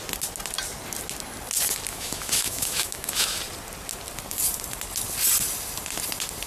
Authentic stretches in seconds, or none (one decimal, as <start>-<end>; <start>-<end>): 0.0-1.9; 3.4-6.5